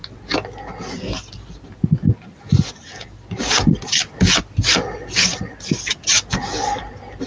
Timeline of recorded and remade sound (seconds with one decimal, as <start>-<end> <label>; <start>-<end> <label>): 0.0-7.3 recorded